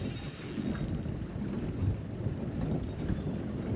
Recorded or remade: recorded